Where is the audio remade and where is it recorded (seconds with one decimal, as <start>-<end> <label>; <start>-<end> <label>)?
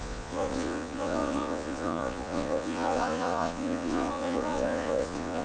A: 0.0-5.4 remade